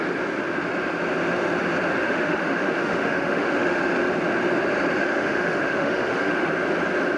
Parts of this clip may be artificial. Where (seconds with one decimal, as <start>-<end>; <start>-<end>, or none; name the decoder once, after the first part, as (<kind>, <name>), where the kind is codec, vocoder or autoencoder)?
2.0-3.8 (autoencoder, DAC-VAE); 5.0-6.5